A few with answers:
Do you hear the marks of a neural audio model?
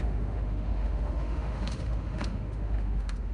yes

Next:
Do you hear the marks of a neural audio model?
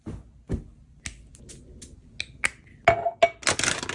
no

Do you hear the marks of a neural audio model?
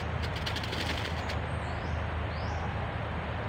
no